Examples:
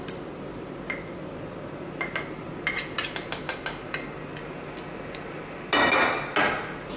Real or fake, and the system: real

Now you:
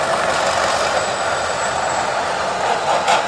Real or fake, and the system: real